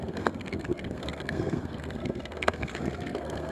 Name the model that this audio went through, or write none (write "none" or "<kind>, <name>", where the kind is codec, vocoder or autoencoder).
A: codec, SNAC